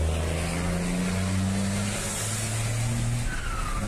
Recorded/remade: recorded